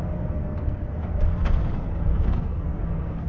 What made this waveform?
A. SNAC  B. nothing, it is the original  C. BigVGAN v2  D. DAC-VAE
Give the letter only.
A